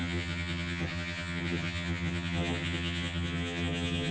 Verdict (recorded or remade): remade